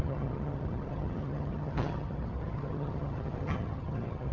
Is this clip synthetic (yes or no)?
yes